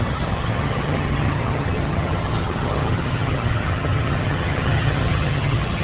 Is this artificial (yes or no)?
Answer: yes